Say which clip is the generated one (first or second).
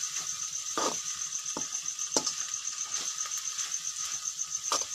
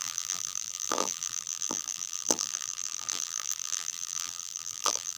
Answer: second